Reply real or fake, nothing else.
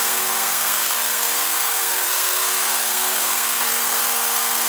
fake